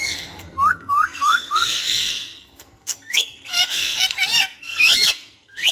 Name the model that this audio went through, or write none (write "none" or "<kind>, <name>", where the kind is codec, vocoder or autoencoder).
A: codec, SNAC